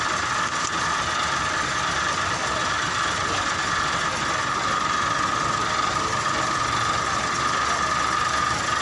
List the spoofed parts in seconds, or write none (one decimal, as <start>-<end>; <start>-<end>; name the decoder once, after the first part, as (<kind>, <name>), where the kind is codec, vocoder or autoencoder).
none